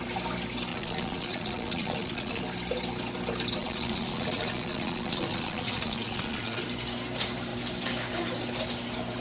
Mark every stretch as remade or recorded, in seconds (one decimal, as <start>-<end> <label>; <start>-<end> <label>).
0.0-0.7 recorded; 0.7-2.4 remade; 2.4-3.6 recorded; 3.6-6.6 remade; 6.6-9.2 recorded